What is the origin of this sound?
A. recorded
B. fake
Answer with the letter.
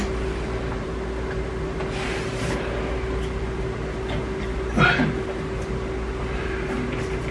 A